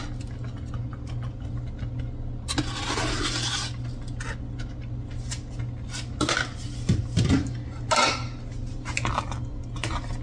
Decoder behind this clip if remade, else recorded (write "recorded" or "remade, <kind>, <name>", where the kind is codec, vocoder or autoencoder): recorded